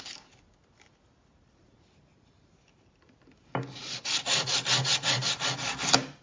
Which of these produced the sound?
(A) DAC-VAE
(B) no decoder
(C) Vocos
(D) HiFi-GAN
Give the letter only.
B